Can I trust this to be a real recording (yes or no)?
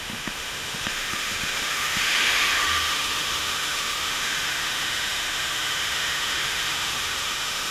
no